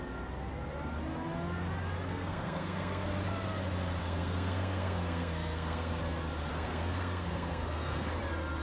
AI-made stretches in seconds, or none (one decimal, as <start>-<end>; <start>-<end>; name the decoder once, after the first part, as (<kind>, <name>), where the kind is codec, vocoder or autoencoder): 2.1-3.1 (codec, SNAC); 4.0-6.0; 6.5-8.2